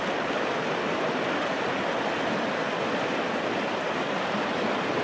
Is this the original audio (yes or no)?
yes